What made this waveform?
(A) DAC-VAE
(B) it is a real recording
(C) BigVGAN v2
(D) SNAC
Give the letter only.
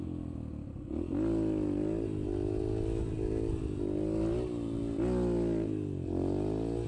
B